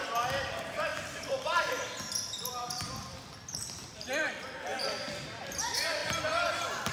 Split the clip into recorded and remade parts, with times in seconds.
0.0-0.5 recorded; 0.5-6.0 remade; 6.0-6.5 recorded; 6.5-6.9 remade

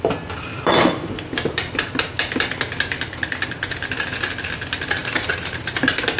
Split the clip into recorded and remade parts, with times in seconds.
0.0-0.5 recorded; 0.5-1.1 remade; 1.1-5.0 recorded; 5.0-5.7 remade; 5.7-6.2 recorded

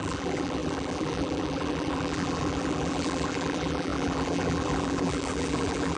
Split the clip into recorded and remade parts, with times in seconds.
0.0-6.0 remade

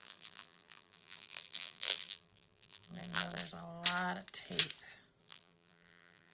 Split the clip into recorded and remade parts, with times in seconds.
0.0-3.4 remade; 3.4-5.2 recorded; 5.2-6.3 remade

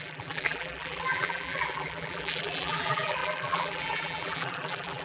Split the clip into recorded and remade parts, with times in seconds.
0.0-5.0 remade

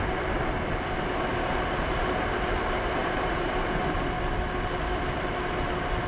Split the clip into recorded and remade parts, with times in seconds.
0.0-3.0 recorded; 3.0-3.8 remade; 3.8-6.1 recorded

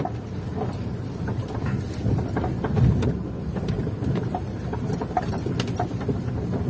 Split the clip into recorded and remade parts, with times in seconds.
0.0-3.4 recorded; 3.4-5.3 remade; 5.3-6.7 recorded

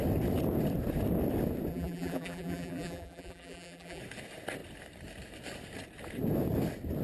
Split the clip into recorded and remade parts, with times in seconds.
0.0-1.7 recorded; 1.7-4.0 remade; 4.0-7.0 recorded